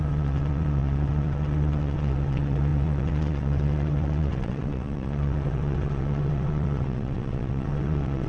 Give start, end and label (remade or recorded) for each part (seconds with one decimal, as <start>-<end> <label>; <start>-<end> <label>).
0.0-8.3 remade